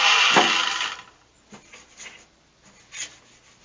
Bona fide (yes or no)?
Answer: yes